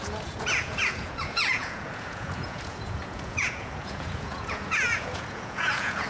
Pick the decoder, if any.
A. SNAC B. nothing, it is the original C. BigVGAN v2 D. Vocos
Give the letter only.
D